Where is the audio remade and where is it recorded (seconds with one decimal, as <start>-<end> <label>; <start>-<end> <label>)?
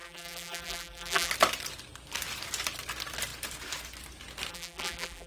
0.0-1.3 remade; 1.3-4.5 recorded; 4.5-5.3 remade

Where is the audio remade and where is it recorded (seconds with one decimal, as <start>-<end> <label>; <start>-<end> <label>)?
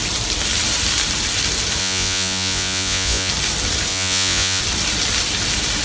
0.0-1.8 recorded; 1.8-3.3 remade; 3.3-3.9 recorded; 3.9-4.6 remade; 4.6-5.8 recorded